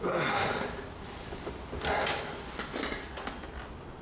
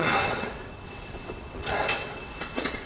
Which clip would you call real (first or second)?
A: first